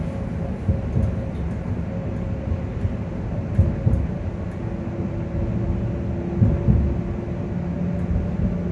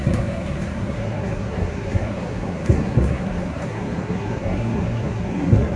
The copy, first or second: second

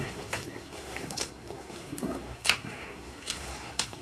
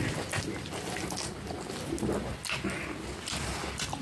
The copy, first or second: first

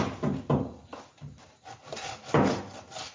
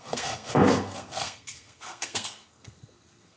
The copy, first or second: second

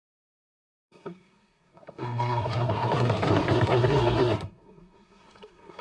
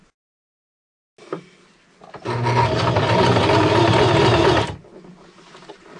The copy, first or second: first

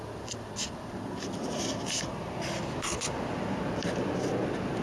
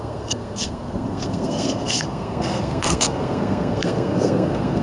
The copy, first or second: second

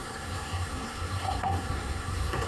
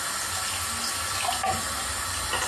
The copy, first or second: first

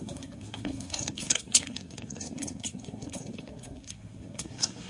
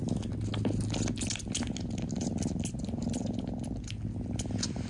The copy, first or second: first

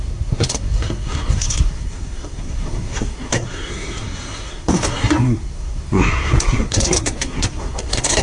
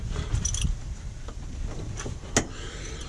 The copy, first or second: first